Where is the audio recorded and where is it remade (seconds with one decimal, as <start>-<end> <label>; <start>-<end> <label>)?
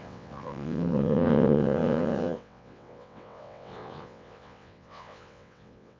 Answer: 0.0-6.0 remade